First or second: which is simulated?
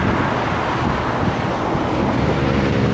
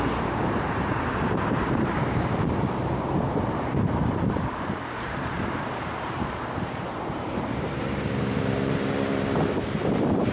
second